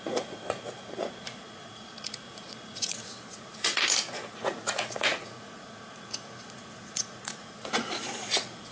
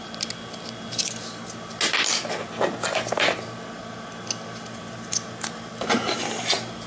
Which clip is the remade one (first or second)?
first